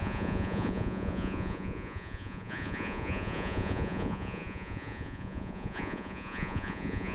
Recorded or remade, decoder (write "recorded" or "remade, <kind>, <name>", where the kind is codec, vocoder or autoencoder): remade, vocoder, Vocos